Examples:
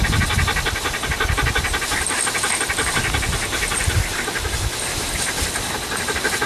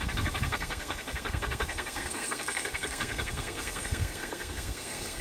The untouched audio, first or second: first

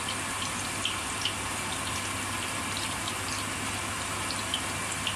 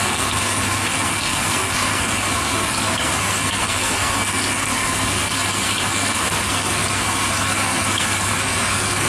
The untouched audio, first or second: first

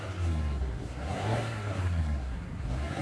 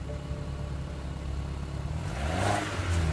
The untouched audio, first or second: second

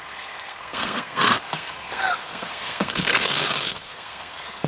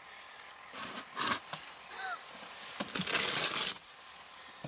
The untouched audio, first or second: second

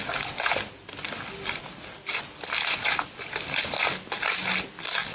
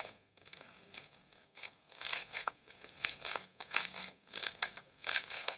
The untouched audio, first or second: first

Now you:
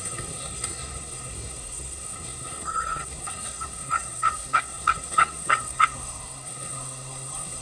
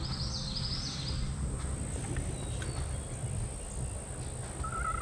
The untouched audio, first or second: second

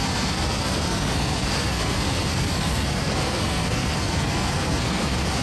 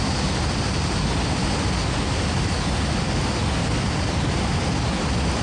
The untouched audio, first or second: second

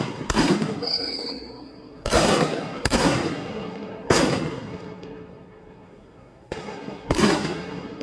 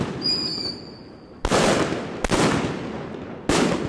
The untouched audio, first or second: second